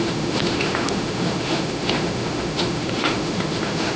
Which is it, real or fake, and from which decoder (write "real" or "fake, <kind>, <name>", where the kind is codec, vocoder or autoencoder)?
fake, autoencoder, DAC-VAE